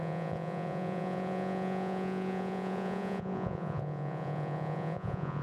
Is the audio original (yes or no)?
no